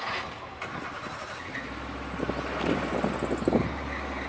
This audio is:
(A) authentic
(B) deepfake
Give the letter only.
A